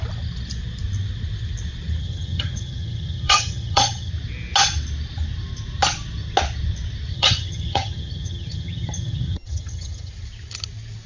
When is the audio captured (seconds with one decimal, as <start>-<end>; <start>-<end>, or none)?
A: 0.0-2.0; 4.1-7.1; 10.1-11.1